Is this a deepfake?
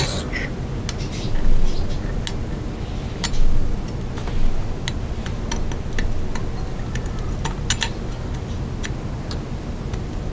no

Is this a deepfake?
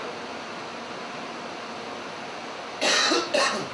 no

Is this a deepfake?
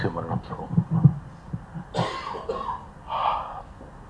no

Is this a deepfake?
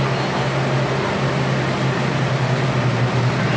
no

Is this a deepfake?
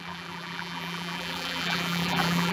yes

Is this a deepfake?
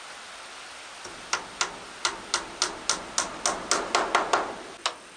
no